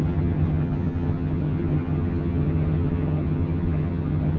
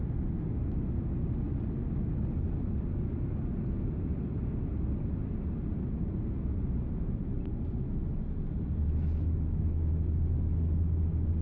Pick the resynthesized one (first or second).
first